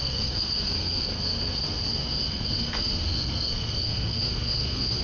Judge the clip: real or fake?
fake